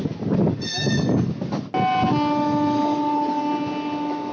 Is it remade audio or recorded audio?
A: recorded